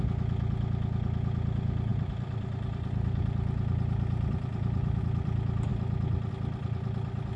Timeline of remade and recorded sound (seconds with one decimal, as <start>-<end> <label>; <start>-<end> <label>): 0.0-1.9 recorded; 1.9-5.0 remade; 5.0-7.4 recorded